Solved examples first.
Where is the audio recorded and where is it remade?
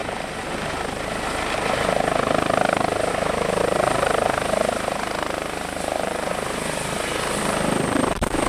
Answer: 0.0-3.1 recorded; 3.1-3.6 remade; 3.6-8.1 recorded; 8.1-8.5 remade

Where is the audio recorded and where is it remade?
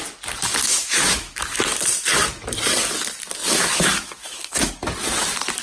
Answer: 0.0-0.6 recorded; 0.6-1.6 remade; 1.6-3.4 recorded; 3.4-4.7 remade; 4.7-5.6 recorded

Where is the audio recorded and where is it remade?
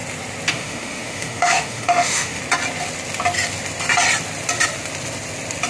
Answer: 0.0-0.5 recorded; 0.5-2.4 remade; 2.4-5.7 recorded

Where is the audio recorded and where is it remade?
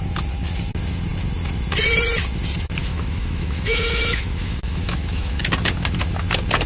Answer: 0.0-2.8 recorded; 2.8-5.4 remade; 5.4-6.7 recorded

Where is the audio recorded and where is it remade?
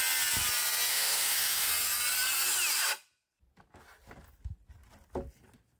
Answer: 0.0-0.9 recorded; 0.9-1.7 remade; 1.7-5.8 recorded